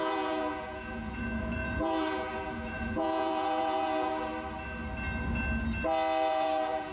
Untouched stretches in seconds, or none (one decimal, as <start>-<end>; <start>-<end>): 4.3-6.3